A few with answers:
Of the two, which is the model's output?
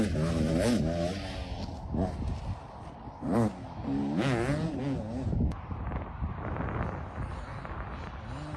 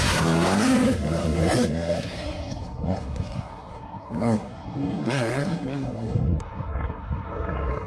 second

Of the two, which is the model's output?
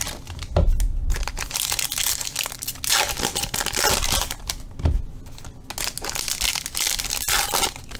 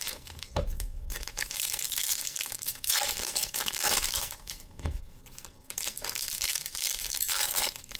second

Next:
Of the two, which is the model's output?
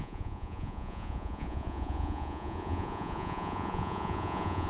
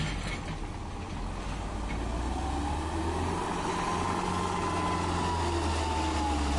first